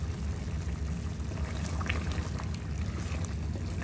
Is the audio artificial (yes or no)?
no